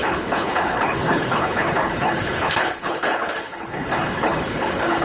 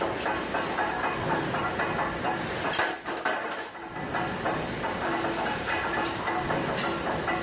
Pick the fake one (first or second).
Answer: first